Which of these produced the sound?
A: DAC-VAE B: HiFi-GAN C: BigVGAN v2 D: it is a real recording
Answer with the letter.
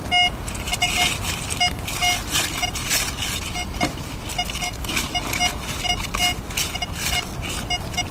D